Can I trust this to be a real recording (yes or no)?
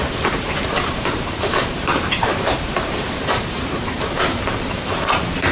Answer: no